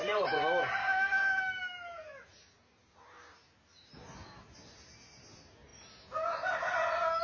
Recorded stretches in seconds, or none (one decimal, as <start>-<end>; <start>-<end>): 0.0-0.8; 1.6-7.2